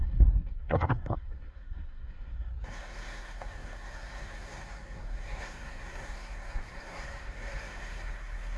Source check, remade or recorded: remade